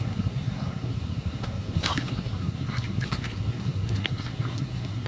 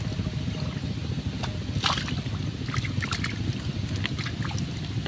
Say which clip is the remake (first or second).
first